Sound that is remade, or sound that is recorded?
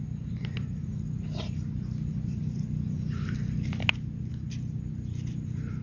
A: recorded